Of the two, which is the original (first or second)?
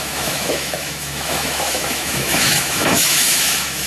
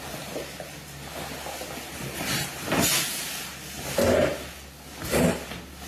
second